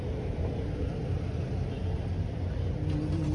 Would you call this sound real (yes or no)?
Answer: yes